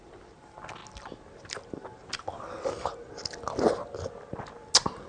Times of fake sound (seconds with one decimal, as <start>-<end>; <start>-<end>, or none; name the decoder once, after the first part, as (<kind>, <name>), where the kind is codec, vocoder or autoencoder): none